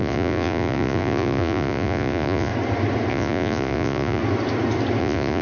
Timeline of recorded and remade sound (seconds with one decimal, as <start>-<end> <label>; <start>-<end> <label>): 0.0-2.5 remade; 2.5-3.1 recorded; 3.1-4.2 remade; 4.2-5.0 recorded; 5.0-5.4 remade